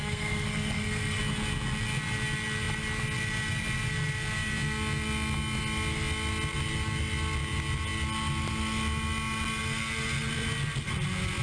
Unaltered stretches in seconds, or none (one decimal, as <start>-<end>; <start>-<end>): 1.2-11.4